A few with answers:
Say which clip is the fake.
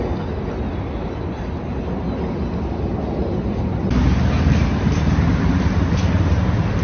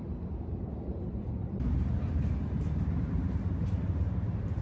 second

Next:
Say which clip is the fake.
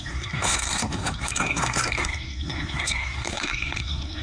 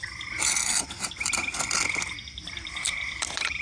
first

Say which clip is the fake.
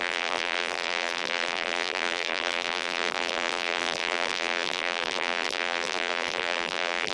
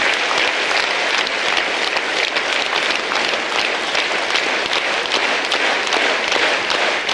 first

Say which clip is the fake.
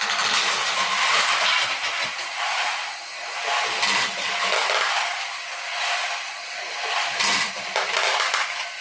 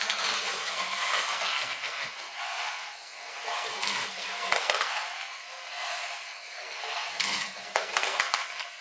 second